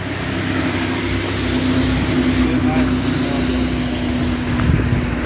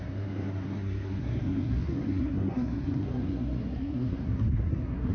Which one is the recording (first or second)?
first